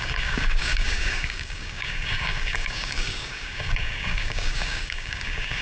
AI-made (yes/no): yes